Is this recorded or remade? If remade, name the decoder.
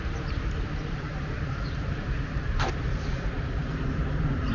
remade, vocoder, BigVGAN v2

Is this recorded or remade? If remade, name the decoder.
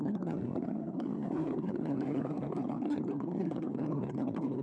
remade, codec, SNAC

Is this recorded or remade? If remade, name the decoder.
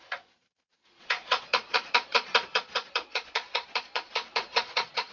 remade, vocoder, Vocos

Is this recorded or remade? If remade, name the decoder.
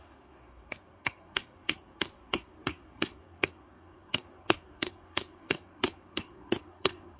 remade, codec, SNAC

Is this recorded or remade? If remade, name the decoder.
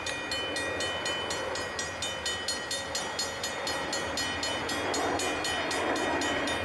recorded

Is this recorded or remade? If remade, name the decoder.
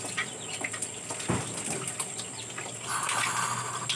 recorded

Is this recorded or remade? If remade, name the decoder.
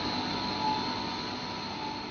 recorded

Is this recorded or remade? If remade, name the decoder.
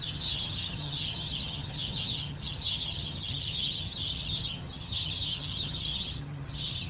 remade, vocoder, HiFi-GAN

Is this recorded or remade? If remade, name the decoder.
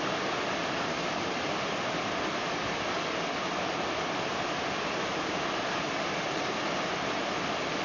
recorded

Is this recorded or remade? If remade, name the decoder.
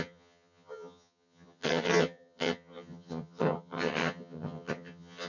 remade, vocoder, HiFi-GAN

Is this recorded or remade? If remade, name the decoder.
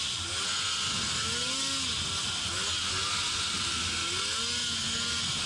recorded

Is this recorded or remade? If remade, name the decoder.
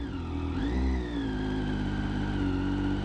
recorded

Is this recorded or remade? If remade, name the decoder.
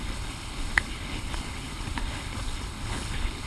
remade, codec, HILCodec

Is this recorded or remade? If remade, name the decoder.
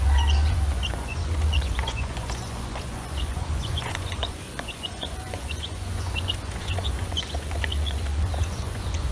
remade, vocoder, Vocos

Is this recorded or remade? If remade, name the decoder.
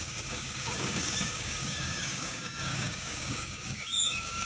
remade, codec, DAC